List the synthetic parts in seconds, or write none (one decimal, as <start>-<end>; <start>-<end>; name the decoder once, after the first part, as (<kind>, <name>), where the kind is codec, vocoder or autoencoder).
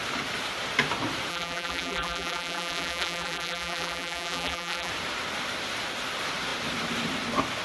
1.3-4.9 (vocoder, BigVGAN v2)